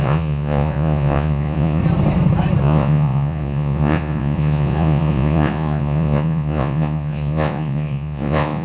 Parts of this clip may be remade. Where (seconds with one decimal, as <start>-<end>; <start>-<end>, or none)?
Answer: 0.0-1.8; 2.6-8.6